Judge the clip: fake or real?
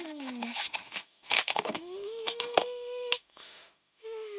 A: fake